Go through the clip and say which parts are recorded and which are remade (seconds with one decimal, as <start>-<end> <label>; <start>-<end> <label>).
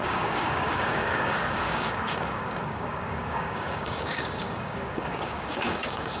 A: 0.0-6.2 remade